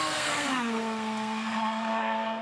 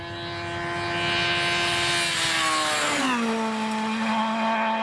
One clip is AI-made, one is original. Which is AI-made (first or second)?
first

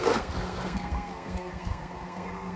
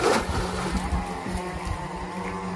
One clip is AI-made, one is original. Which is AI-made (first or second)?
first